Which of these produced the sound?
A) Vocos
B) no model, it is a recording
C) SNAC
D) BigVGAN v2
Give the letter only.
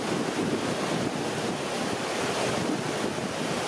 B